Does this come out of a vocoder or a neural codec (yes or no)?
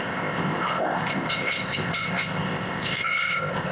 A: yes